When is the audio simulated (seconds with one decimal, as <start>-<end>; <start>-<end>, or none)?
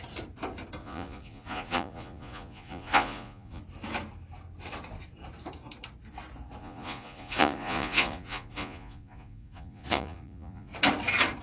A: 0.8-3.6; 6.6-10.7